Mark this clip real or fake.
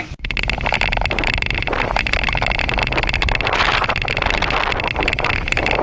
real